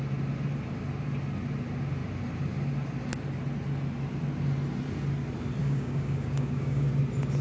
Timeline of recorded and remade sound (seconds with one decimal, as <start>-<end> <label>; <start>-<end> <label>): 0.0-5.6 recorded; 5.6-6.9 remade; 6.9-7.4 recorded